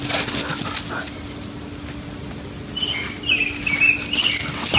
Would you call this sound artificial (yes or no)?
no